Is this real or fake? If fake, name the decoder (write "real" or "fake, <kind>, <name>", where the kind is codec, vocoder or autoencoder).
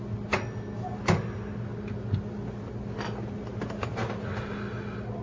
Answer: real